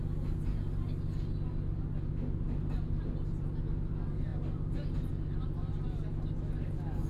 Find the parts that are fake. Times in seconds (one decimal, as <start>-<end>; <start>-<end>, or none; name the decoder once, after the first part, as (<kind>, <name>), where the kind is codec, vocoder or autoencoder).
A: none